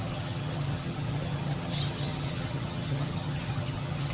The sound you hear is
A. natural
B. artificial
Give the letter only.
B